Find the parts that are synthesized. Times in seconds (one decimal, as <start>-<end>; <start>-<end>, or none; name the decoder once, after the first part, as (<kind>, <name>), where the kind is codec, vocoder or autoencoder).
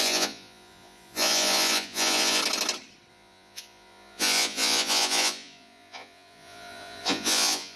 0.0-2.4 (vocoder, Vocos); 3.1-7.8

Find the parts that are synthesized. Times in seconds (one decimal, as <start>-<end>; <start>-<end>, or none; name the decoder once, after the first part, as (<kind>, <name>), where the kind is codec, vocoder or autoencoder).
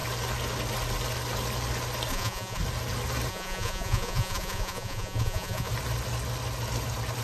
2.1-2.6 (vocoder, Vocos); 3.3-5.7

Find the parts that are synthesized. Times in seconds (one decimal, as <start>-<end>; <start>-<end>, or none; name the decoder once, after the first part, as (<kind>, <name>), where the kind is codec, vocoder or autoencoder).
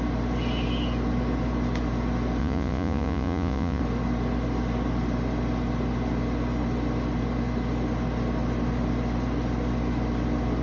2.4-3.8 (vocoder, Vocos)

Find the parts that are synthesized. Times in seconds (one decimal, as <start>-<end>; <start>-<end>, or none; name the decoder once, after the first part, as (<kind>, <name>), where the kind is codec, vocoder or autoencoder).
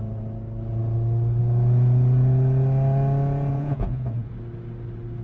3.5-4.3 (vocoder, Vocos)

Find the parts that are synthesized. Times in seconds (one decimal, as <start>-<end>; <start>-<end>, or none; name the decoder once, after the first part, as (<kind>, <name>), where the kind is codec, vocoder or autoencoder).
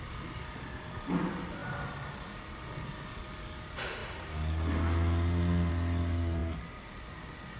none